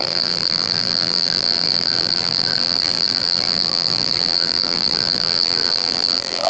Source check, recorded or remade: remade